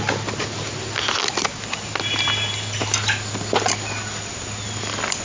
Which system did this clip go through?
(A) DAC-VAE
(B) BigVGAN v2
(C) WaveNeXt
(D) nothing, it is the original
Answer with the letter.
D